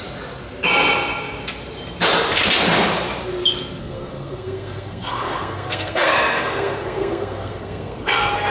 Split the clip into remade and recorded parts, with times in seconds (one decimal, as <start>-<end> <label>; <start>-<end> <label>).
0.0-3.8 recorded; 3.8-8.5 remade